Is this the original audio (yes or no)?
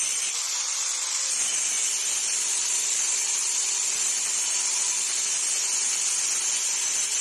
yes